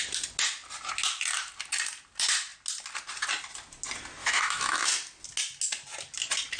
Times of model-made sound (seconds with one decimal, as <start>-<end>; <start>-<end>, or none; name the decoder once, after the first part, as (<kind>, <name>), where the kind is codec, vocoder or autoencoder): 4.2-4.9 (autoencoder, DAC-VAE)